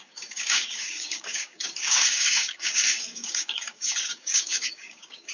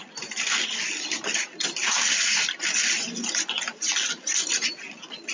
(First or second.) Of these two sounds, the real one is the second